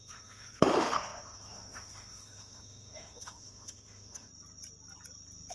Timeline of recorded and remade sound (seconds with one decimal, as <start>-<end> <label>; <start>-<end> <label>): 0.0-4.3 remade; 4.3-5.5 recorded